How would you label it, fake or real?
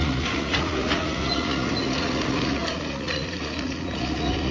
fake